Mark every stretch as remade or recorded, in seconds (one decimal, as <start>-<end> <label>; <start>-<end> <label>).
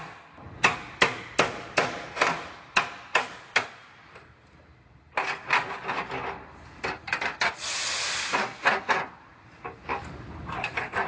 0.0-11.1 recorded